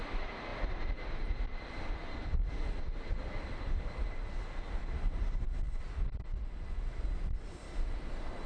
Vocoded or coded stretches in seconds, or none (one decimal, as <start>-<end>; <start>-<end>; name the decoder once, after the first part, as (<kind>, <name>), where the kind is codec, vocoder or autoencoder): none

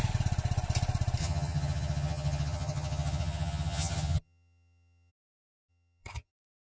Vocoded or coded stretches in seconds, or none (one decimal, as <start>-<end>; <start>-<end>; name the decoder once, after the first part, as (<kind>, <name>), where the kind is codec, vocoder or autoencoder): 1.2-5.1 (vocoder, HiFi-GAN); 5.7-6.3

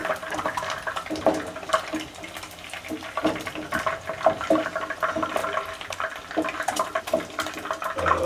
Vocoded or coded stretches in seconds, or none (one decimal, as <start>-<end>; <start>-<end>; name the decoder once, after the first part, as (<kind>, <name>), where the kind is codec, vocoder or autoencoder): none

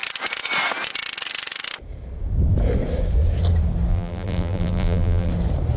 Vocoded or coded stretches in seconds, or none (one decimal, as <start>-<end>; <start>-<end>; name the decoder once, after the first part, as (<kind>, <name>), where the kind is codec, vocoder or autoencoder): 3.9-5.3 (vocoder, BigVGAN v2)